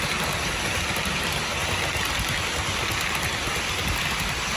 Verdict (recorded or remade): recorded